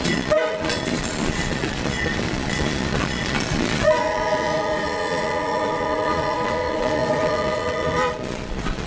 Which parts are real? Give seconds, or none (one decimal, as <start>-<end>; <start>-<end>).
none